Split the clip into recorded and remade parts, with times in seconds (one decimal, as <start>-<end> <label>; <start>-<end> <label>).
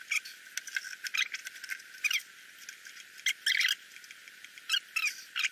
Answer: 0.0-5.5 recorded